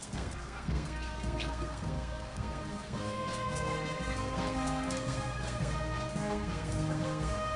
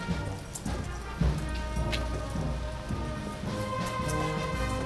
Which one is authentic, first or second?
second